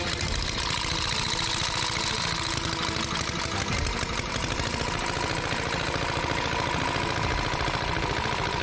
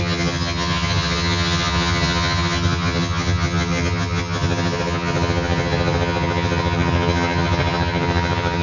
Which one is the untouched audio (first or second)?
first